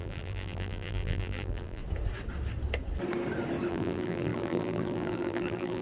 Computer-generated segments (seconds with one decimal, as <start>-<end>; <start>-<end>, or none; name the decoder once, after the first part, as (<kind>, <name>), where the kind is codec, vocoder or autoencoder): 0.0-1.8 (vocoder, BigVGAN v2); 3.7-5.8